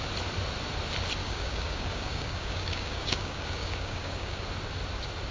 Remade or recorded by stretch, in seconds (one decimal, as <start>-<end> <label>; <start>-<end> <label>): 0.0-1.2 recorded; 1.2-4.4 remade; 4.4-5.3 recorded